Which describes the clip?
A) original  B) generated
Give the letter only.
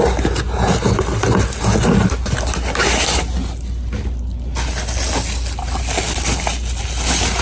A